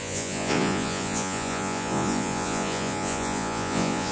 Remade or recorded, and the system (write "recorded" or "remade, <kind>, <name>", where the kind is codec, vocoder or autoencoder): remade, vocoder, Vocos